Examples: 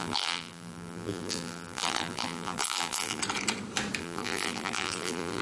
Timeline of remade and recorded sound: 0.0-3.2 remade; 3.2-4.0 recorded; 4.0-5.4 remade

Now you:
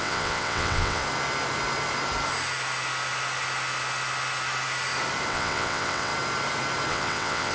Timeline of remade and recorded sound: 0.0-1.0 remade; 1.0-5.3 recorded; 5.3-6.1 remade; 6.1-6.9 recorded; 6.9-7.5 remade

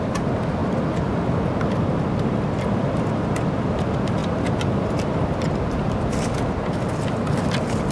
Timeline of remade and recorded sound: 0.0-0.6 recorded; 0.6-1.3 remade; 1.3-7.9 recorded

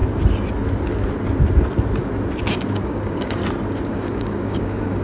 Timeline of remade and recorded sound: 0.0-2.5 recorded; 2.5-3.4 remade; 3.4-3.9 recorded; 3.9-5.0 remade

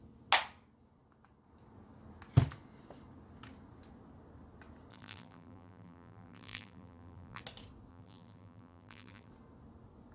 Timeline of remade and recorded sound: 0.0-4.9 recorded; 4.9-7.4 remade; 7.4-7.9 recorded; 7.9-9.3 remade; 9.3-10.1 recorded

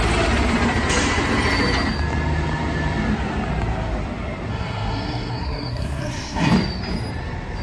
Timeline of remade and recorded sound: 0.0-4.5 recorded; 4.5-6.5 remade; 6.5-7.6 recorded

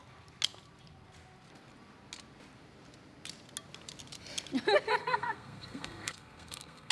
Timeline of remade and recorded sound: 0.0-5.0 recorded; 5.0-6.9 remade

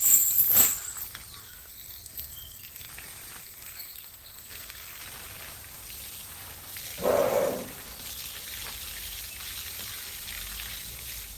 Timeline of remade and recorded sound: 0.0-1.4 recorded; 1.4-2.9 remade; 2.9-3.4 recorded; 3.4-5.0 remade; 5.0-11.4 recorded